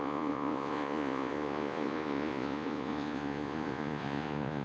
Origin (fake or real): fake